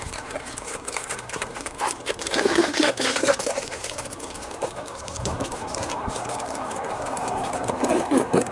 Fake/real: fake